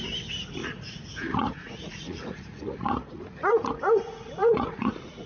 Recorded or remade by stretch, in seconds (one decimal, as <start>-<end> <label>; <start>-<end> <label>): 0.0-0.6 recorded; 0.6-3.8 remade; 3.8-4.4 recorded; 4.4-5.3 remade